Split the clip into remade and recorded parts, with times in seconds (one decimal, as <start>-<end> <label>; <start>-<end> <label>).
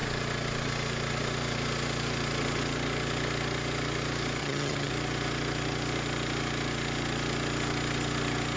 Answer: 0.0-4.4 recorded; 4.4-4.9 remade; 4.9-8.6 recorded